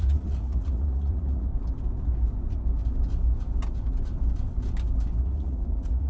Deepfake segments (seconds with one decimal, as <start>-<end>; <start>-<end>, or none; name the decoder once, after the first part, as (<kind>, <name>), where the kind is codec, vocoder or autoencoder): 0.0-1.5 (vocoder, Vocos); 5.2-6.1